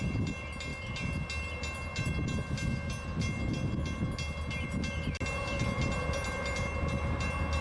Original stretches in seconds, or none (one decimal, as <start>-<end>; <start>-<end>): 0.0-7.6